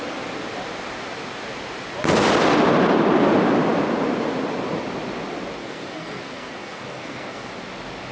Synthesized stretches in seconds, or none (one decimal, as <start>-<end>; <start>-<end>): 5.6-7.5